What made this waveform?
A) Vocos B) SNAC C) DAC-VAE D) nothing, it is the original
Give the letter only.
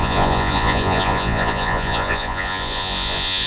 A